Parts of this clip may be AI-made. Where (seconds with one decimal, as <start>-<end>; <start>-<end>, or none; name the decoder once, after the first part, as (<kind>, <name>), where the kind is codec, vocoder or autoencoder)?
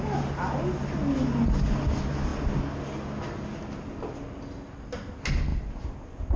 none